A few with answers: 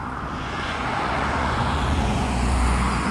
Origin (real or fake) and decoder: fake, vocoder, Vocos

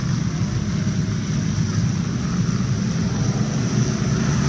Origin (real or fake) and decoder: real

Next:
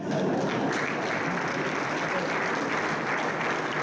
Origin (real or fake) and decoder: real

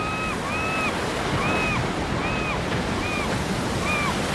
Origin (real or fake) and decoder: real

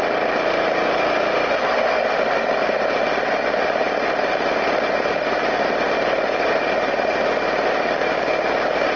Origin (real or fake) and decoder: real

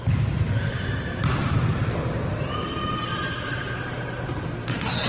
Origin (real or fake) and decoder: fake, vocoder, BigVGAN v2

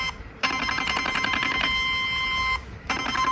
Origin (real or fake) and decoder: real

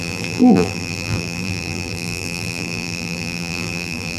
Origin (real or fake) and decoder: fake, vocoder, BigVGAN v2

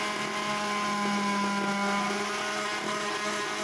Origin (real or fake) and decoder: real